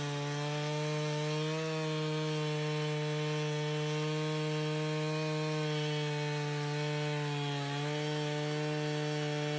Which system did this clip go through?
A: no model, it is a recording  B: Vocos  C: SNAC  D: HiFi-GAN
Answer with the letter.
A